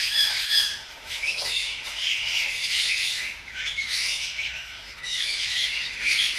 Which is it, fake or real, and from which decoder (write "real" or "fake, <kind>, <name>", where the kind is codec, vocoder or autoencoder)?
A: fake, autoencoder, DAC-VAE